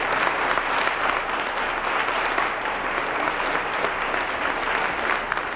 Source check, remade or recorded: recorded